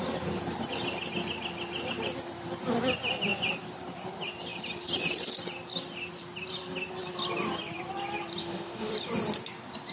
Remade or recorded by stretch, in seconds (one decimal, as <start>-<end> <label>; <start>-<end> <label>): 0.0-8.4 recorded; 8.4-8.9 remade; 8.9-9.9 recorded